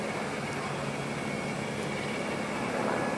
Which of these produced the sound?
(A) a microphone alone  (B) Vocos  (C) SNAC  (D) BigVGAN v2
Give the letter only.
A